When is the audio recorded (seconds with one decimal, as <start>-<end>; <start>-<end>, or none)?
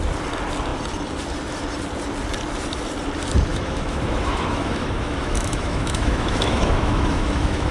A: 0.0-3.5